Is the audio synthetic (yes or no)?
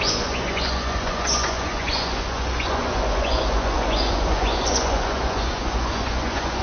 yes